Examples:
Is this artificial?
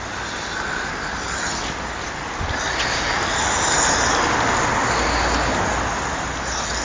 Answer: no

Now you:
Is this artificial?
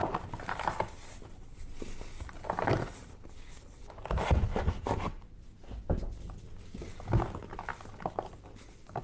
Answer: no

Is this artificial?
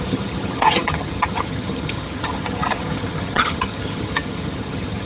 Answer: yes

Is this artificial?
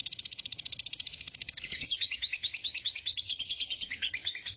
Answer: yes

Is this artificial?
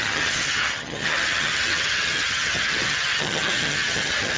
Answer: yes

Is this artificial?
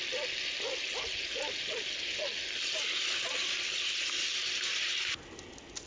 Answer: no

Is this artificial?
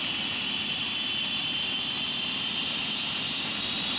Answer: no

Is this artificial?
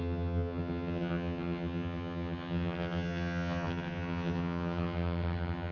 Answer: yes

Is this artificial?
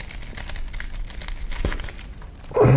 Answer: no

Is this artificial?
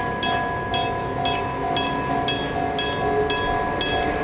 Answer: no